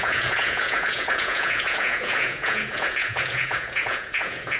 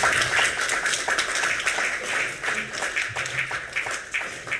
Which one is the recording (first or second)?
second